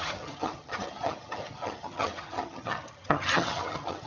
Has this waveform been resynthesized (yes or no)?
yes